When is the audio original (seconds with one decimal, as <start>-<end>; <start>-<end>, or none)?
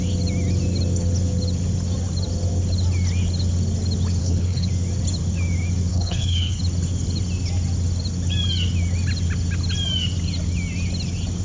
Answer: 0.0-4.2; 4.7-5.9; 6.6-11.4